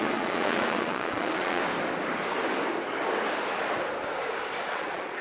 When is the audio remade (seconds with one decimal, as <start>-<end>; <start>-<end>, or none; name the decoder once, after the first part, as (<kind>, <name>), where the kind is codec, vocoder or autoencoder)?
0.0-1.6 (vocoder, Vocos); 4.7-5.2